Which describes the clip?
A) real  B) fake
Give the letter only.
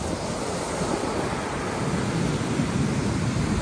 A